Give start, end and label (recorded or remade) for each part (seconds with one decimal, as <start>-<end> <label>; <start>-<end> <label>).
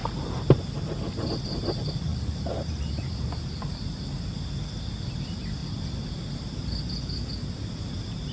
0.0-2.1 recorded; 2.1-3.4 remade; 3.4-8.3 recorded